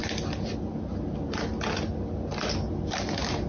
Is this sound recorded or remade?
recorded